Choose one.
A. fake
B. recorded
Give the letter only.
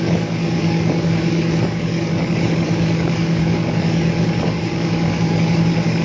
A